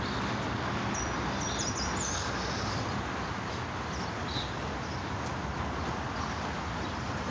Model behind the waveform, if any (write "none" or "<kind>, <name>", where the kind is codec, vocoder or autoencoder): none